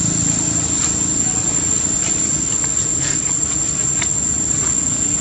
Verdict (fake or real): real